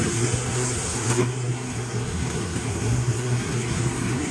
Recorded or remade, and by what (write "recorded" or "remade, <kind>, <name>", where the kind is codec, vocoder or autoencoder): remade, codec, SNAC